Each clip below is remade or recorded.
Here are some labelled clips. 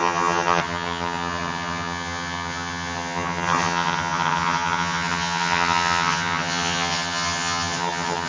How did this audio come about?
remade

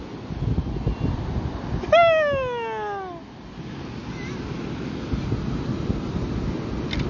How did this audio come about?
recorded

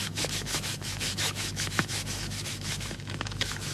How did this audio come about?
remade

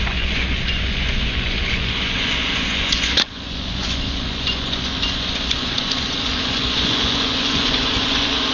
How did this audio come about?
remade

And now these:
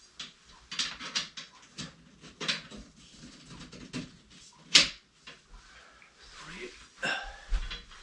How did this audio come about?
recorded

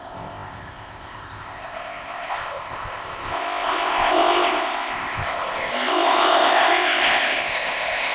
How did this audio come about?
remade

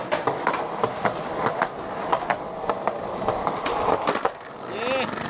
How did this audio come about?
recorded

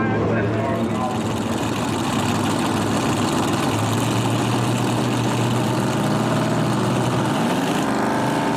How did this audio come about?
recorded